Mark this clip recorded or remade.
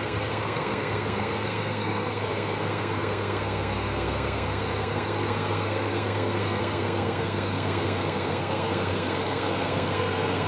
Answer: remade